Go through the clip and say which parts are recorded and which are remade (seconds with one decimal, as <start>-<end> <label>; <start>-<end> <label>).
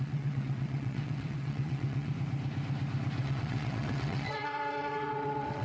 0.0-2.1 remade; 2.1-3.2 recorded; 3.2-5.6 remade